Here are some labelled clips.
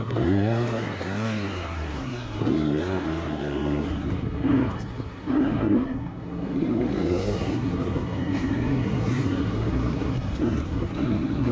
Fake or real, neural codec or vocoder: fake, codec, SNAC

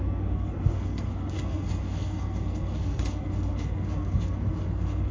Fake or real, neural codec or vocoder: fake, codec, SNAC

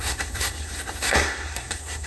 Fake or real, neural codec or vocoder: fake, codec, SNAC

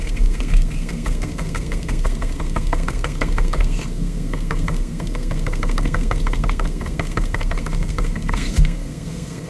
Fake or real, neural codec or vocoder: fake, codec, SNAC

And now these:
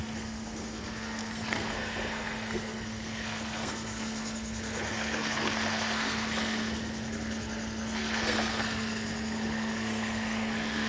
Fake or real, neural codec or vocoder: fake, codec, SNAC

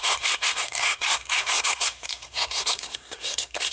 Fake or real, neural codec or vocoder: fake, codec, SNAC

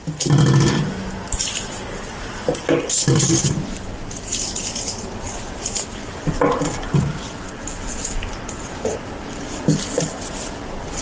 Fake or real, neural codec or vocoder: real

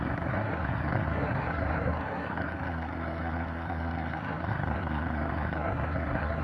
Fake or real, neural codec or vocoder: fake, codec, SNAC